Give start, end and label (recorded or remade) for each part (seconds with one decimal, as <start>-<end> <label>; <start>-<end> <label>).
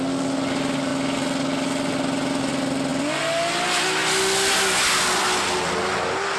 0.0-6.4 recorded